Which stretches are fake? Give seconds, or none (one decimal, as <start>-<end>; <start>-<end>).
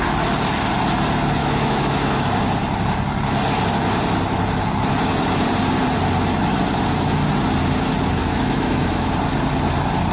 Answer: 1.4-2.2; 8.2-9.1